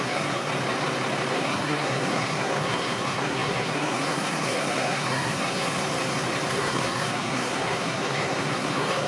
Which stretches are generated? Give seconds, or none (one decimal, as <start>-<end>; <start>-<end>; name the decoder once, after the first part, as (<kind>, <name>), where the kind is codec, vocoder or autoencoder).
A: 0.0-0.5 (codec, SNAC); 1.3-5.8; 6.5-9.1